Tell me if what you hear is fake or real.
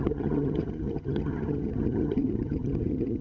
fake